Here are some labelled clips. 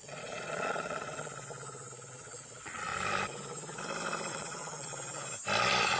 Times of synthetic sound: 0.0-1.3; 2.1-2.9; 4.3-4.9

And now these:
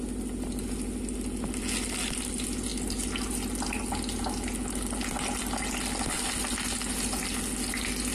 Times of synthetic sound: none

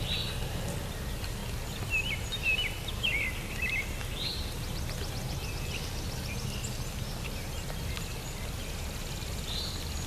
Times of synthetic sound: none